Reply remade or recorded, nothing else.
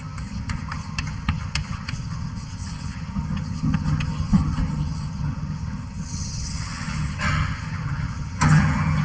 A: remade